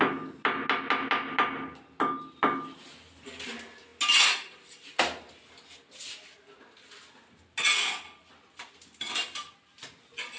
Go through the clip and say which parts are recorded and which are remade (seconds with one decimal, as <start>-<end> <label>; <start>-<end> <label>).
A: 0.0-10.4 recorded